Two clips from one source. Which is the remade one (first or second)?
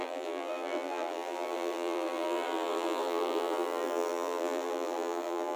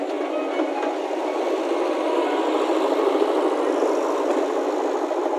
first